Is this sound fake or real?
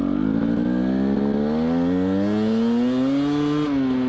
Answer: real